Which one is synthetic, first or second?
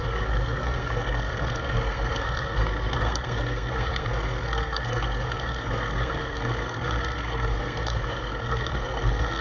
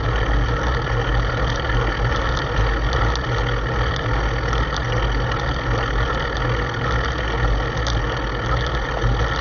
first